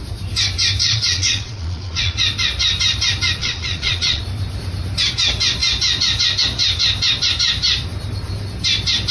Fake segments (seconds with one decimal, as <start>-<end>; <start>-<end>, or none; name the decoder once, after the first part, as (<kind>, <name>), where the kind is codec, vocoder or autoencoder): 0.8-2.2 (vocoder, Vocos); 3.4-4.2